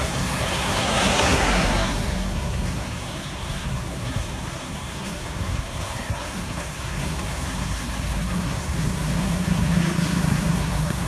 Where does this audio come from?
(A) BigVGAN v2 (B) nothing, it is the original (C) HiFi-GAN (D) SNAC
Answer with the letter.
D